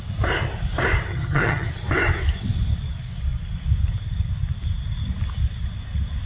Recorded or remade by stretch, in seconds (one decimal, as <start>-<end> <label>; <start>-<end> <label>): 0.0-1.1 recorded; 1.1-1.7 remade; 1.7-6.3 recorded